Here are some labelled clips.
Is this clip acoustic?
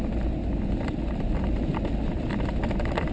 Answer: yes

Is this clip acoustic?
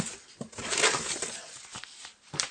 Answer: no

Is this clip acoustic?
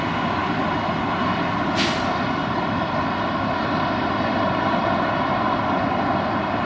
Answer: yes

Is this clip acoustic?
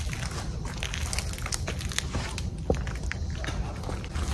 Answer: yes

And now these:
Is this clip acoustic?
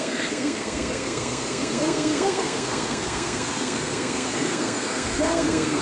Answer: no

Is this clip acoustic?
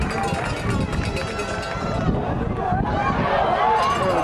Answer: yes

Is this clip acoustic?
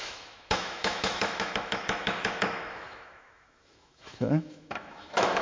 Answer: no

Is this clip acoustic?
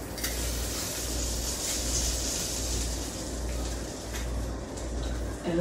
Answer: yes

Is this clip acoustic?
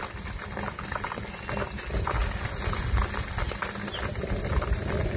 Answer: yes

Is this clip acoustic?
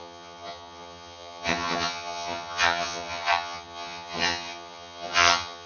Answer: no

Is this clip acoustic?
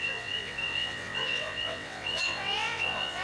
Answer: no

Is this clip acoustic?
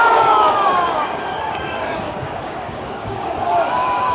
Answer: no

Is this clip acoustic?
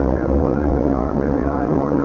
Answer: no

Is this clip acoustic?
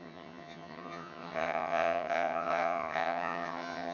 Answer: no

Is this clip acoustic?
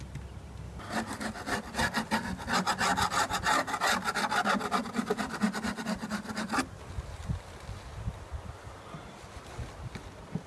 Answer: yes